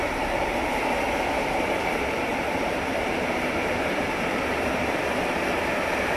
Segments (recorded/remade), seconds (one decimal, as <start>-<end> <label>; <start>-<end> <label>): 0.0-6.2 remade